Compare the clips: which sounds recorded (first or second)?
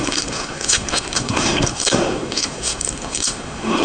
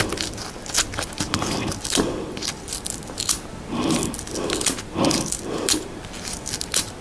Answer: second